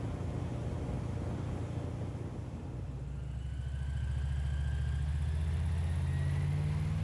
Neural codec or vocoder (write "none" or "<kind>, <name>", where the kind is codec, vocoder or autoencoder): none